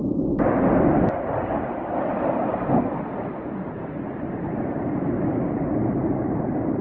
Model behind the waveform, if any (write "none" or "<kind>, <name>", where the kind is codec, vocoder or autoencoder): none